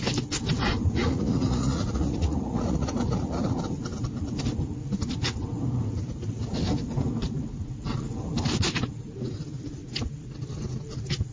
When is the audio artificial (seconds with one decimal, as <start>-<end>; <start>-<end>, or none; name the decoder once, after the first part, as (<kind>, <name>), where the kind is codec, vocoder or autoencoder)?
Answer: 0.8-3.6 (vocoder, Vocos)